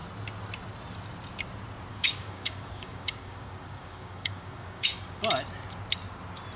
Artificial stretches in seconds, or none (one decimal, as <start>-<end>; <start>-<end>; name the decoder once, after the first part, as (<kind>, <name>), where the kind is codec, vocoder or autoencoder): 1.9-5.0 (codec, DAC)